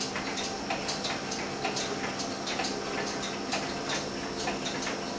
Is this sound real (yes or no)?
yes